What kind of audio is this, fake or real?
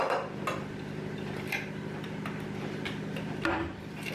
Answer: real